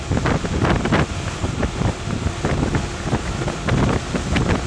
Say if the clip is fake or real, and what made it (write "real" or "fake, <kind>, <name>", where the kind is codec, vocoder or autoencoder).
real